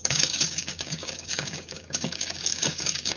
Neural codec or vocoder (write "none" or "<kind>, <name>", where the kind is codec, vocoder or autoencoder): codec, DAC